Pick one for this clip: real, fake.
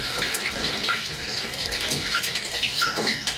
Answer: fake